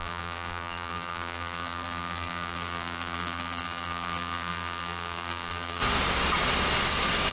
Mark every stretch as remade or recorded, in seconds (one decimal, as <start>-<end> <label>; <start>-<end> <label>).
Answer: 0.0-5.8 remade; 5.8-7.3 recorded